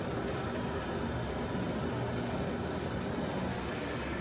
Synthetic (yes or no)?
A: no